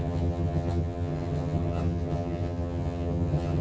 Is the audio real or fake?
fake